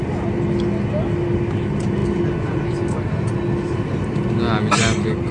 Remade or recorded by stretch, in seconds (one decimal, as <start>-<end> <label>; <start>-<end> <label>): 0.0-5.3 recorded